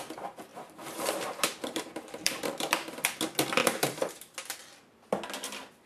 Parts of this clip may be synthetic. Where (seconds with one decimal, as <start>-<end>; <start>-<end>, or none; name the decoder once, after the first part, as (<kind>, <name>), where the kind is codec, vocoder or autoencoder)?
0.5-2.7 (vocoder, BigVGAN v2); 3.6-4.1